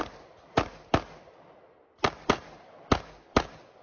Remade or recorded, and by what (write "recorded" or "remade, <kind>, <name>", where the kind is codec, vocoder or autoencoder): recorded